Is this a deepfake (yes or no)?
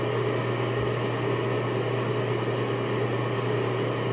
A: no